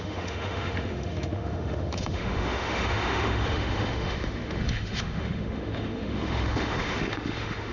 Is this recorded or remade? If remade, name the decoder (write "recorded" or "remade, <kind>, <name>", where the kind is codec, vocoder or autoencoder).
remade, autoencoder, DAC-VAE